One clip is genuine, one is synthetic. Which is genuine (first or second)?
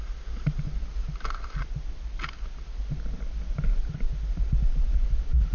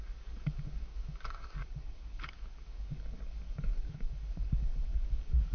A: first